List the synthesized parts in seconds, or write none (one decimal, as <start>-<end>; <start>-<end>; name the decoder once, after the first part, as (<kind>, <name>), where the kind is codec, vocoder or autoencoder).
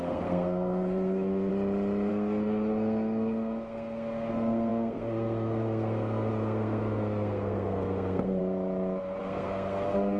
0.0-1.5 (codec, SNAC); 2.1-8.4; 9.2-10.2